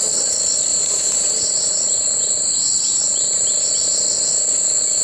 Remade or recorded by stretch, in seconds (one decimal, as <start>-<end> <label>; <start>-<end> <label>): 0.0-0.7 recorded; 0.7-3.7 remade; 3.7-5.0 recorded